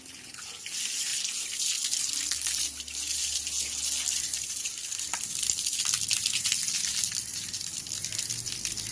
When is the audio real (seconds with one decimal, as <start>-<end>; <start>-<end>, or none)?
0.0-8.9